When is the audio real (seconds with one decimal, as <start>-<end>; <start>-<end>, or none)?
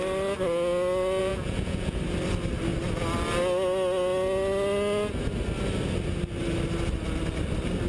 0.0-1.2; 2.0-7.9